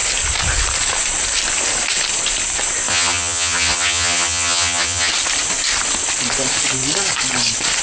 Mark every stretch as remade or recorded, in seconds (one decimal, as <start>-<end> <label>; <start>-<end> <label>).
0.0-2.9 recorded; 2.9-5.1 remade; 5.1-7.8 recorded